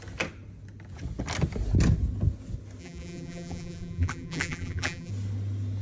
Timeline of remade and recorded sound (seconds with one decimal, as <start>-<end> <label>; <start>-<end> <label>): 0.0-2.8 recorded; 2.8-5.1 remade; 5.1-5.8 recorded